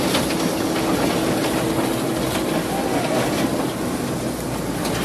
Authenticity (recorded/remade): recorded